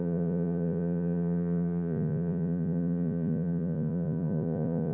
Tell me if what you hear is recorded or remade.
remade